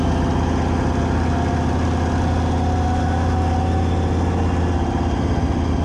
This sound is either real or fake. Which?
real